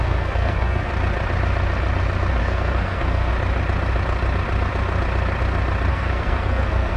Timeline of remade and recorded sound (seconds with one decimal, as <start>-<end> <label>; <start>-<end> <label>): 0.0-0.9 remade; 0.9-2.4 recorded; 2.4-3.3 remade; 3.3-5.9 recorded; 5.9-7.0 remade

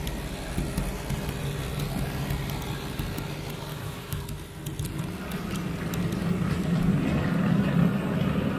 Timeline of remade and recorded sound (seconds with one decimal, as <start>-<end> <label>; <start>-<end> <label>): 0.0-3.7 recorded; 3.7-4.2 remade; 4.2-8.6 recorded